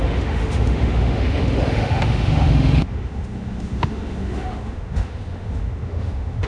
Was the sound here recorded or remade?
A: remade